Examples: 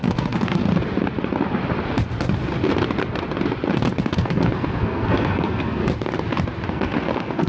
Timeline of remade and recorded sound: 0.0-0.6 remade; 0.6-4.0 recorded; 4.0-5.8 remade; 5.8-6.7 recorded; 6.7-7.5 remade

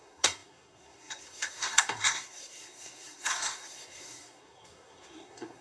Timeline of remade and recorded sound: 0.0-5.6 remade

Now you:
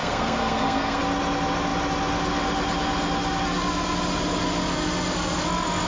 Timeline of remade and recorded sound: 0.0-1.0 remade; 1.0-5.9 recorded

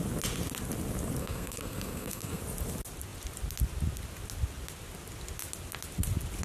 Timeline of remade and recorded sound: 0.0-1.2 recorded; 1.2-2.4 remade; 2.4-6.4 recorded

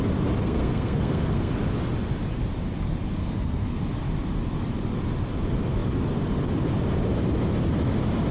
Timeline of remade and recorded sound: 0.0-0.4 recorded; 0.4-1.5 remade; 1.5-3.2 recorded; 3.2-3.8 remade; 3.8-8.3 recorded

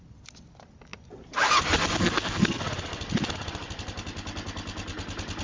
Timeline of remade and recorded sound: 0.0-2.0 recorded; 2.0-2.6 remade; 2.6-5.4 recorded

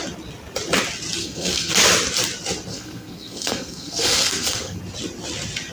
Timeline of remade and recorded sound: 0.0-1.2 recorded; 1.2-1.7 remade; 1.7-2.7 recorded; 2.7-4.8 remade; 4.8-5.7 recorded

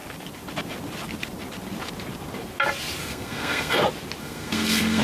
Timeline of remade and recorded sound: 0.0-3.0 recorded; 3.0-3.8 remade; 3.8-4.2 recorded; 4.2-5.0 remade